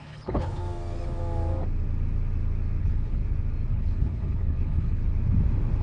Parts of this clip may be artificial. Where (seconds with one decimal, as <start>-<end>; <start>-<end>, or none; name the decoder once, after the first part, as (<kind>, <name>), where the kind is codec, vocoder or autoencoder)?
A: 0.0-0.6 (codec, HILCodec); 2.8-3.2; 3.7-5.0